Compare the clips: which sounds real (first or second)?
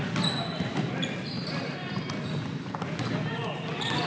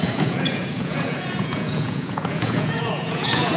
first